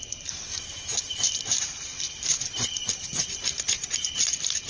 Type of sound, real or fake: fake